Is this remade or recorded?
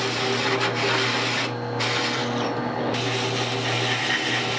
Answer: recorded